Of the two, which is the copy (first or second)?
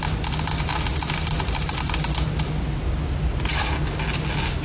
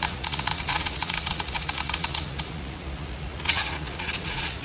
second